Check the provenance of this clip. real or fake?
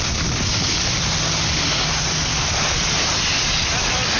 fake